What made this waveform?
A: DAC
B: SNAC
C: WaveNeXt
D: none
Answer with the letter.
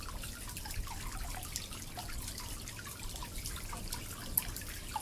D